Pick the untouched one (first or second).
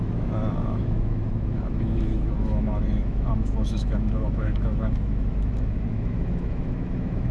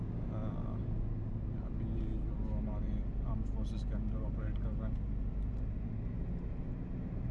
second